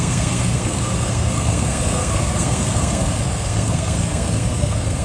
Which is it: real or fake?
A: fake